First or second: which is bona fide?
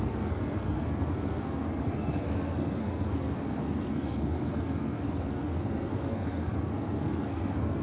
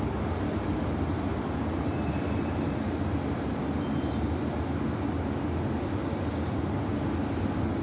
second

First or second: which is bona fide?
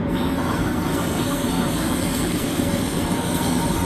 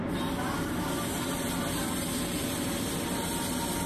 second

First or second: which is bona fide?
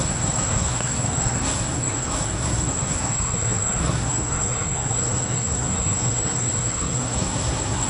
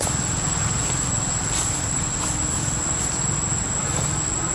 second